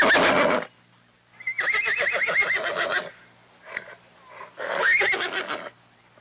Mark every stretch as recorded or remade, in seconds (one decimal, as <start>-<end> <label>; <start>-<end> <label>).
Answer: 0.0-4.4 recorded; 4.4-5.0 remade; 5.0-6.2 recorded